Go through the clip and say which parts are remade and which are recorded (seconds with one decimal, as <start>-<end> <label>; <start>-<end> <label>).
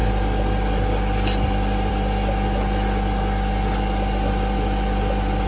0.0-5.5 recorded